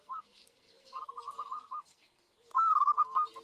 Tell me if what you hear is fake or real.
fake